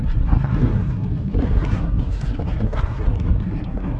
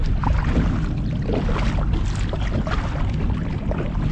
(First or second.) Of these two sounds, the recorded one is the second